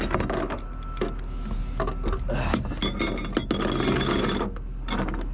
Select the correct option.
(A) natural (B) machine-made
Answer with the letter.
A